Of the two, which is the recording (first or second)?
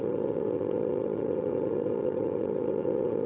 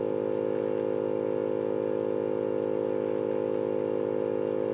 second